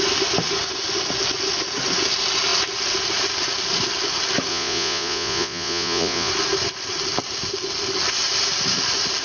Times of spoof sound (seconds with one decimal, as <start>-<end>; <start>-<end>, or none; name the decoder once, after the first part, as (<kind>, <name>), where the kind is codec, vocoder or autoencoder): 4.5-6.3 (vocoder, Vocos)